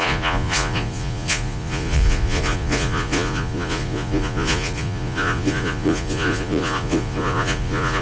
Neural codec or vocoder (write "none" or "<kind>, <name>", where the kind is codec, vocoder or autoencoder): vocoder, Vocos